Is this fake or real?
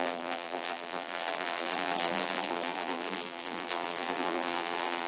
fake